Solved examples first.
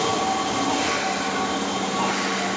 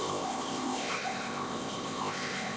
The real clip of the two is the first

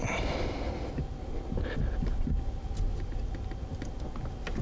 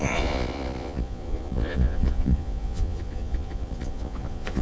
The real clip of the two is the first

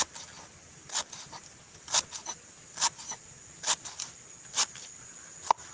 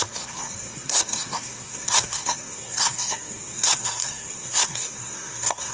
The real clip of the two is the first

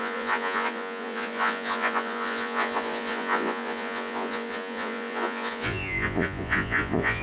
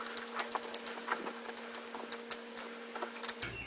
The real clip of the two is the second